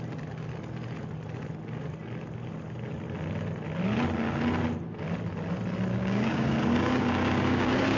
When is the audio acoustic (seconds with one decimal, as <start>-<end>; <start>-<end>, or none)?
0.0-5.9